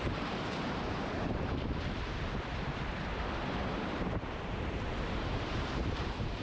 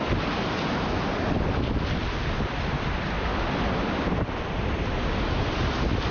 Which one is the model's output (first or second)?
first